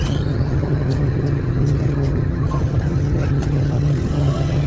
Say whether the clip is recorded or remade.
remade